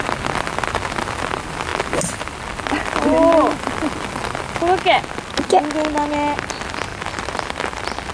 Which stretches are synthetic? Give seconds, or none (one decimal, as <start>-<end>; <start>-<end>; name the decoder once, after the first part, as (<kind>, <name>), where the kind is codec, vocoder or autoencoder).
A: 6.9-8.1 (vocoder, BigVGAN v2)